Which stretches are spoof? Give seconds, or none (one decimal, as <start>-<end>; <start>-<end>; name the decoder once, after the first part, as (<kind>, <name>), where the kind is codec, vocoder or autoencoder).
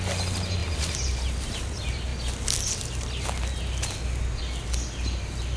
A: none